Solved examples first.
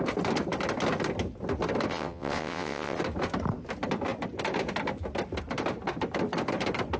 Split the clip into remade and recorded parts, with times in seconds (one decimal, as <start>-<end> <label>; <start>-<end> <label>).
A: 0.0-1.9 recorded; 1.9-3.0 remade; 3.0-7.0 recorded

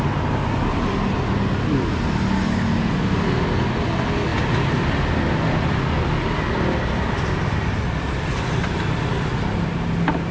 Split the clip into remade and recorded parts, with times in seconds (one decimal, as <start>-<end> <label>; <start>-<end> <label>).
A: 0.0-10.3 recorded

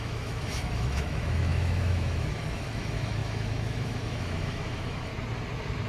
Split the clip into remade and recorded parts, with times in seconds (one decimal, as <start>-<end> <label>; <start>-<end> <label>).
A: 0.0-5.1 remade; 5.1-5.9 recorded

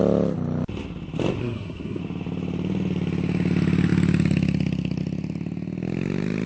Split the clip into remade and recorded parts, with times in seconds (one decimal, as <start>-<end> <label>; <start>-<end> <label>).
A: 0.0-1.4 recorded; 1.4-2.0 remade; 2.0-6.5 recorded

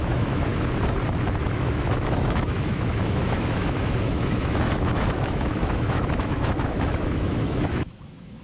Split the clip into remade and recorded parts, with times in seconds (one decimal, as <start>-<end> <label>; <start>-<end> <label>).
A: 0.0-0.5 remade; 0.5-1.4 recorded; 1.4-8.4 remade